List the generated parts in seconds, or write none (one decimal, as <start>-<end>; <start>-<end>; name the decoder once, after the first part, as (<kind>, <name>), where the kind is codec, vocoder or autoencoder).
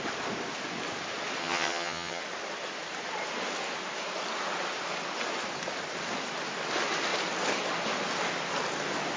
1.4-2.2 (vocoder, HiFi-GAN)